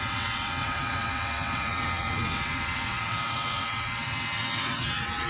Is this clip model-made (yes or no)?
yes